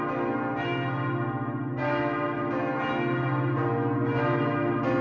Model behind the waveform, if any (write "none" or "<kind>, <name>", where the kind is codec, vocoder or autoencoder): none